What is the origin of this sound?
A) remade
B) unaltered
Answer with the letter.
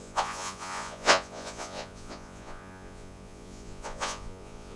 A